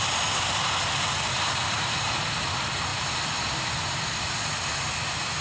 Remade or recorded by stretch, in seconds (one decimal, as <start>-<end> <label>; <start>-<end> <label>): 0.0-5.4 recorded